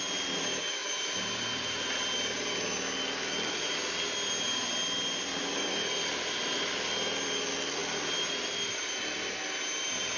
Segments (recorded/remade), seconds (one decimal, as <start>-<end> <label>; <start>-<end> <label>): 0.0-10.2 recorded